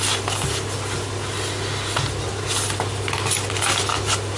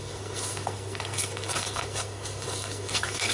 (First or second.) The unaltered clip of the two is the first